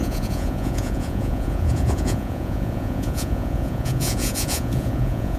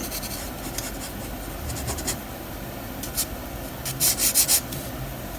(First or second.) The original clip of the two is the second